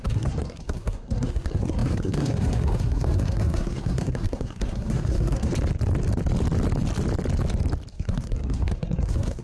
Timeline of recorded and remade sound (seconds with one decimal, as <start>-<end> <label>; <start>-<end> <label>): 0.0-5.5 remade; 5.5-7.9 recorded; 7.9-9.4 remade